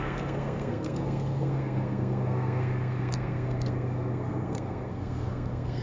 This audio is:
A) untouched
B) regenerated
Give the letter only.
B